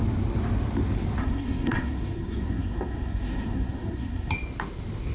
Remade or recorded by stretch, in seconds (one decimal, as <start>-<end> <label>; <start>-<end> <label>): 0.0-1.2 recorded; 1.2-4.3 remade; 4.3-5.1 recorded